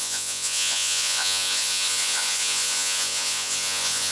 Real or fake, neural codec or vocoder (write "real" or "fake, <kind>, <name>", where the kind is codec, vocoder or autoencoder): fake, vocoder, Vocos